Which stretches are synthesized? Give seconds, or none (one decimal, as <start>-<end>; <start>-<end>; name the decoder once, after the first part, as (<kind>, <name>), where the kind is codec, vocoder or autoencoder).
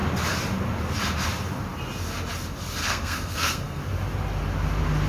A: 2.8-3.8 (codec, SNAC)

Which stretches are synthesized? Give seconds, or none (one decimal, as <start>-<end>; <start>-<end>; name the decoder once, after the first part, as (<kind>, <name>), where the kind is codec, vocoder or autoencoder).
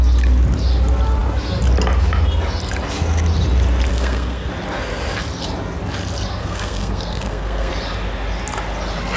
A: 3.9-4.5 (codec, SNAC); 6.4-7.7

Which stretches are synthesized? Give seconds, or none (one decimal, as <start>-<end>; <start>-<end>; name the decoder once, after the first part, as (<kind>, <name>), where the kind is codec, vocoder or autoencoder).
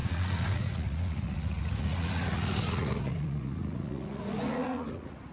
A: 0.0-5.3 (vocoder, Vocos)